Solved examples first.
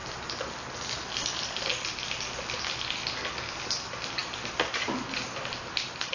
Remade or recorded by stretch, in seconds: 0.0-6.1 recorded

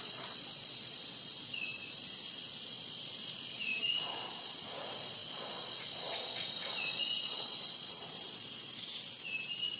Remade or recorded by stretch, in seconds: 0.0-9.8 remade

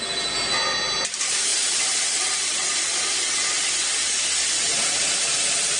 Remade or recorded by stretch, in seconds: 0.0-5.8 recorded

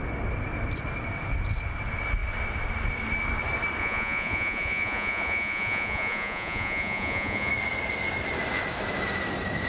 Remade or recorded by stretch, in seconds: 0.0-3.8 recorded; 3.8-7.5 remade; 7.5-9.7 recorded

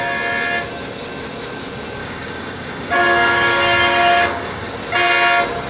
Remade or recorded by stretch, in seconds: 0.0-2.0 recorded; 2.0-4.7 remade; 4.7-5.7 recorded